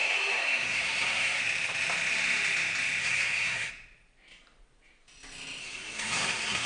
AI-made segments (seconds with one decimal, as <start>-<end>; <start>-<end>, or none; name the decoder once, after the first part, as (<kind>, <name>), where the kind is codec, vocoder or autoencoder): 0.0-1.4 (codec, SNAC); 3.0-3.7; 5.6-6.7